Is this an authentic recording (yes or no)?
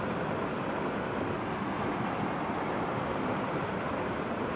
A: yes